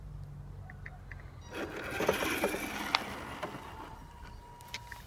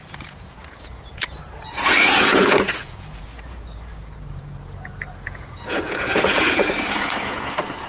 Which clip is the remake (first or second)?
second